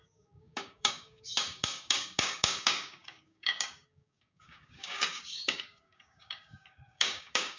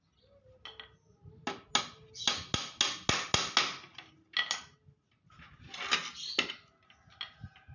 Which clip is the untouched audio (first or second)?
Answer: second